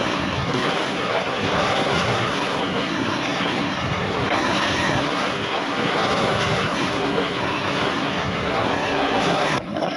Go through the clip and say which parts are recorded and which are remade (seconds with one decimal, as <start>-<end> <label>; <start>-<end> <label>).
0.0-10.0 remade